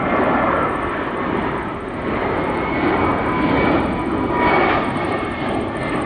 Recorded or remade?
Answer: recorded